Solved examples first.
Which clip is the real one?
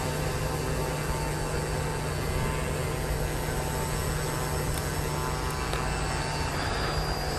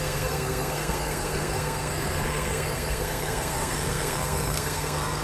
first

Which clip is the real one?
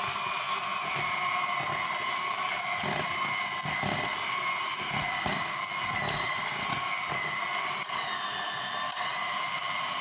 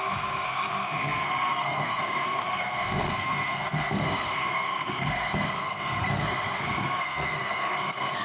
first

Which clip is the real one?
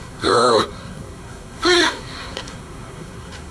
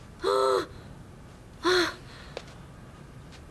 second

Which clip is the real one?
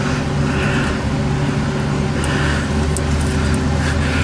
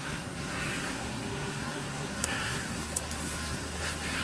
first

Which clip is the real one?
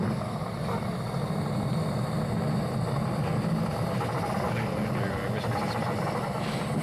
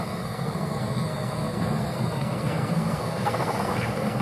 first